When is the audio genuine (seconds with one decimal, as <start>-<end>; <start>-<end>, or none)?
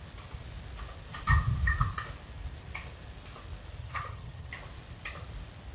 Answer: 0.0-3.8; 4.5-5.7